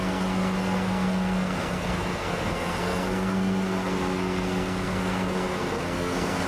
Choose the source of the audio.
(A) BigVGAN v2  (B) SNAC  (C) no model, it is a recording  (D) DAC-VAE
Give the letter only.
B